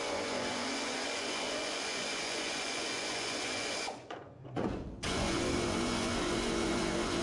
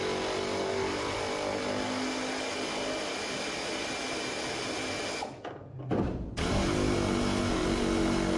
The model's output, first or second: first